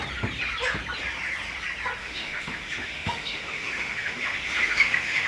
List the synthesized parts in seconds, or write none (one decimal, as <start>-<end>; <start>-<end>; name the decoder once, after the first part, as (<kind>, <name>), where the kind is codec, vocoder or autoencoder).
2.0-5.3 (autoencoder, DAC-VAE)